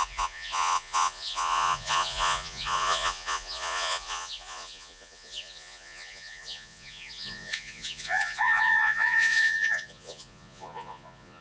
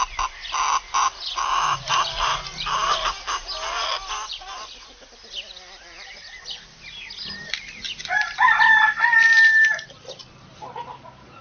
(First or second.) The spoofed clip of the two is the first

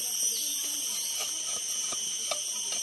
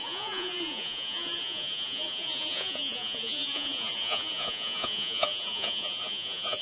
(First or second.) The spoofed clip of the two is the second